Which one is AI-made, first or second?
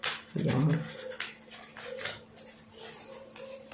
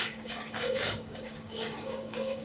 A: second